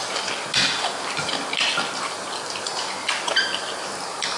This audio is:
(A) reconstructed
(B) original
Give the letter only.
B